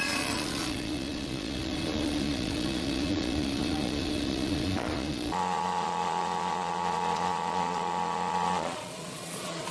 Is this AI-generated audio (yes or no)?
yes